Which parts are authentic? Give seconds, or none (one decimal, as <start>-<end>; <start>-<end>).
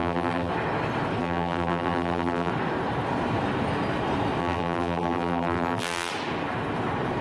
0.5-1.2; 2.5-4.4; 6.1-7.2